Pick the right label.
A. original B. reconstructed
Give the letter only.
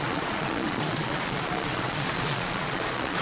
B